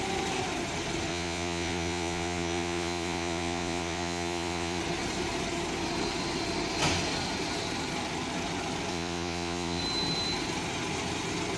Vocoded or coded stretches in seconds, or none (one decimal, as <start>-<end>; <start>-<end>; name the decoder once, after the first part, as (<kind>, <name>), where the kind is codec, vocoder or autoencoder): 1.1-4.8 (vocoder, Vocos); 8.9-9.8